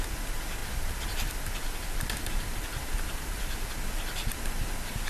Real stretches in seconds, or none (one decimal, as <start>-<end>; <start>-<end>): 0.0-0.6; 3.7-5.1